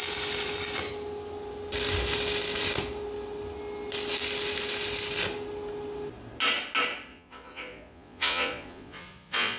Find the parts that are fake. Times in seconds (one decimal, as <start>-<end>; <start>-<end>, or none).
7.1-9.6